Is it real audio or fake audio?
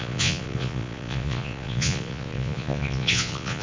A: fake